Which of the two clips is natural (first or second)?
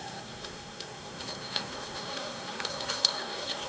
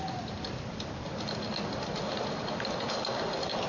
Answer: second